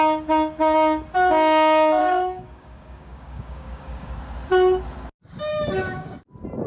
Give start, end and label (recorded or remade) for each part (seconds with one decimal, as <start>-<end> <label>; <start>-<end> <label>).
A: 0.0-2.0 recorded; 2.0-4.2 remade; 4.2-5.5 recorded; 5.5-6.2 remade; 6.2-6.7 recorded

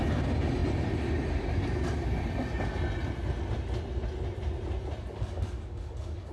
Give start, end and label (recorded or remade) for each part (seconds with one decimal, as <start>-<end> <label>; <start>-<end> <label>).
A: 0.0-5.1 recorded; 5.1-6.3 remade

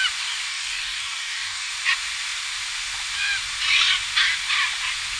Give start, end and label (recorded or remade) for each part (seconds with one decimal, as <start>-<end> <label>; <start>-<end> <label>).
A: 0.0-0.5 recorded; 0.5-1.7 remade; 1.7-5.2 recorded

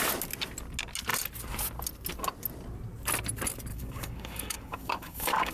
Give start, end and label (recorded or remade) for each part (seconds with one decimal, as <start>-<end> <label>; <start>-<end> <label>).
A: 0.0-3.7 recorded; 3.7-5.5 remade

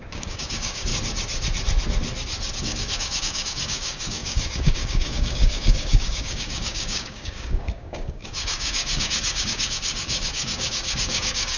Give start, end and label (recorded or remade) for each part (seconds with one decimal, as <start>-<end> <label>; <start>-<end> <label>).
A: 0.0-0.9 remade; 0.9-2.6 recorded; 2.6-11.6 remade

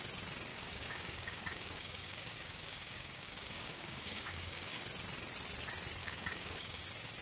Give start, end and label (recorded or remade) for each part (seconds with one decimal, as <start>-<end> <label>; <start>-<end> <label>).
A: 0.0-0.5 recorded; 0.5-4.8 remade; 4.8-6.0 recorded; 6.0-6.8 remade; 6.8-7.2 recorded

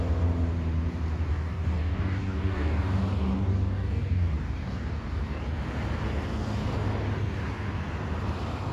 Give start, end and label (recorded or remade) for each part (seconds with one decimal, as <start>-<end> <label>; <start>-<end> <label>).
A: 0.0-1.3 recorded; 1.3-3.0 remade; 3.0-3.5 recorded; 3.5-5.4 remade; 5.4-8.7 recorded

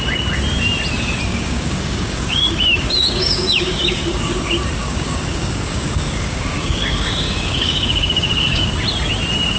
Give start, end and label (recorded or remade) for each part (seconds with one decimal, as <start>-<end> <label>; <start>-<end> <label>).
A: 0.0-1.3 recorded; 1.3-4.3 remade; 4.3-4.8 recorded; 4.8-8.7 remade; 8.7-9.6 recorded